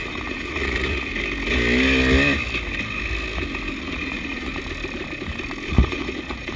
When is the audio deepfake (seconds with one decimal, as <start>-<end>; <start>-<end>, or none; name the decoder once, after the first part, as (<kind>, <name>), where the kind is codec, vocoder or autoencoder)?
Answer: 0.0-1.1 (vocoder, Vocos); 3.8-4.5; 5.7-6.6